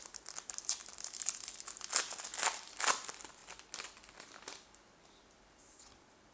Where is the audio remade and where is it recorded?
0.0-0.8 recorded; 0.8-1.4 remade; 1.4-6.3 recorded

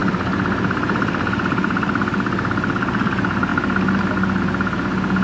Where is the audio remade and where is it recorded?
0.0-5.2 recorded